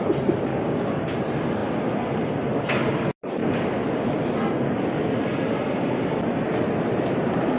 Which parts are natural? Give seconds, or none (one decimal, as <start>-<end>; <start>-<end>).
0.0-0.5; 1.2-7.6